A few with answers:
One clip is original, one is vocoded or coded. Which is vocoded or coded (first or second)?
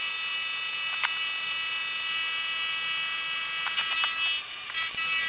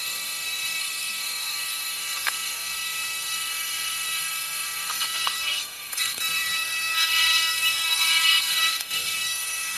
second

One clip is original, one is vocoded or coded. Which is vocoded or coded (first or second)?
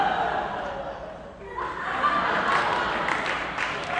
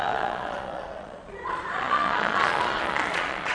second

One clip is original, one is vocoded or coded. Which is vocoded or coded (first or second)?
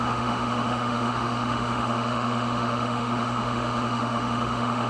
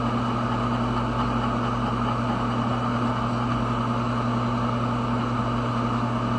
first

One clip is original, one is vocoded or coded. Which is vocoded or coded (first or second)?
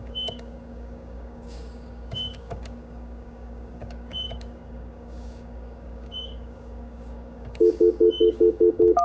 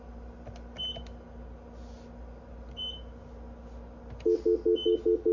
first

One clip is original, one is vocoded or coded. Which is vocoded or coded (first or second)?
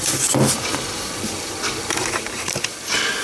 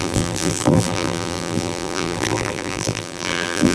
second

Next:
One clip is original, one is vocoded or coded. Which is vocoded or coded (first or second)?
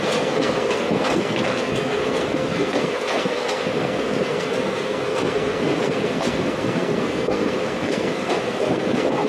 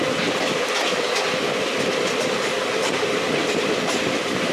first